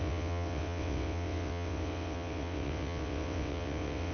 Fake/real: fake